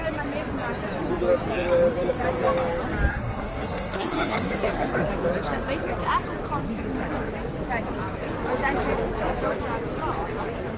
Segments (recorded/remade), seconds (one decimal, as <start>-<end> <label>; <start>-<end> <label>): 0.0-3.1 recorded; 3.1-5.1 remade; 5.1-10.8 recorded